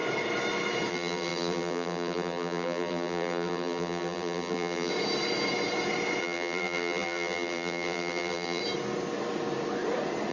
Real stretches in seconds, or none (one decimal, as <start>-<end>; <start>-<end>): 0.0-0.9; 4.9-6.2; 8.6-10.3